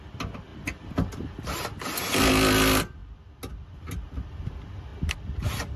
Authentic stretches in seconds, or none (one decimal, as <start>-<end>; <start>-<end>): 0.0-5.8